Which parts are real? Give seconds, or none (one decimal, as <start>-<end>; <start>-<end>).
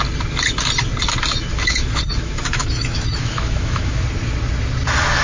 0.0-1.5; 4.0-5.2